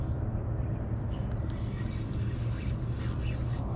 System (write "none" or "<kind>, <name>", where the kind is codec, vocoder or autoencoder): none